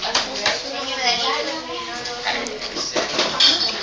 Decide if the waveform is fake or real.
real